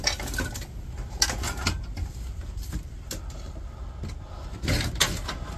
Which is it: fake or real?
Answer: real